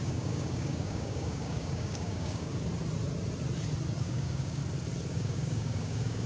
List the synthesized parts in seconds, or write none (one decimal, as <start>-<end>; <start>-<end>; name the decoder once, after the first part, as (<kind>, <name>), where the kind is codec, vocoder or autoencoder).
0.0-2.5 (codec, DAC); 4.0-4.6; 5.1-6.3